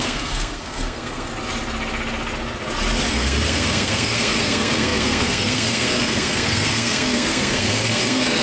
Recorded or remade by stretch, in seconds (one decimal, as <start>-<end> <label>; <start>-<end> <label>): 0.0-1.3 remade; 1.3-3.1 recorded; 3.1-8.4 remade